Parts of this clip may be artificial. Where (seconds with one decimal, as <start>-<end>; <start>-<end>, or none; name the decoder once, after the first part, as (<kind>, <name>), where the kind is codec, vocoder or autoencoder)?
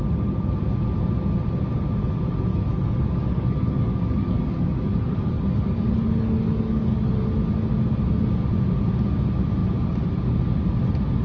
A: 2.5-7.2 (codec, DAC)